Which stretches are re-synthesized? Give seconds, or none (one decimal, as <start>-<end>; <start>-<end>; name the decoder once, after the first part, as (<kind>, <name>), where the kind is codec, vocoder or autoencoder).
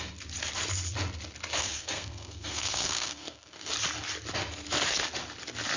1.6-3.7 (codec, SNAC)